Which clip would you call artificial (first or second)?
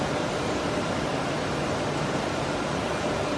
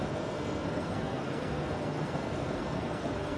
second